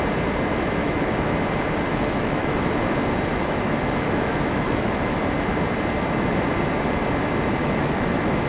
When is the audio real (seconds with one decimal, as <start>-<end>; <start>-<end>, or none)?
0.0-0.8; 1.3-1.9; 2.6-3.3; 5.2-7.6